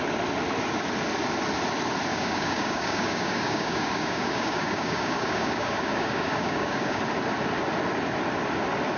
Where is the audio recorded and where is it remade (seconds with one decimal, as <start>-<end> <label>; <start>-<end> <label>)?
0.0-2.1 recorded; 2.1-7.0 remade; 7.0-9.0 recorded